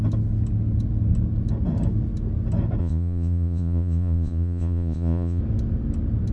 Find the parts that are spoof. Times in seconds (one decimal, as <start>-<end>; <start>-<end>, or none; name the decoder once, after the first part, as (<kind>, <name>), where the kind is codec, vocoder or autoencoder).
2.8-5.4 (vocoder, Vocos)